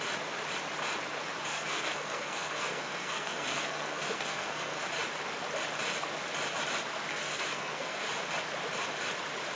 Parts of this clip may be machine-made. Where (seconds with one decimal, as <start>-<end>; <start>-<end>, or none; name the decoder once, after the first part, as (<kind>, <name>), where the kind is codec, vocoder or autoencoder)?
1.5-4.9 (codec, SNAC); 7.1-8.1